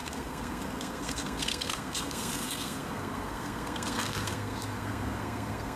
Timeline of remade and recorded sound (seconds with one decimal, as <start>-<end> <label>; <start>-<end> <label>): 0.0-5.8 remade